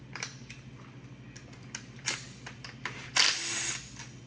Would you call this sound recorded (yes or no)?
yes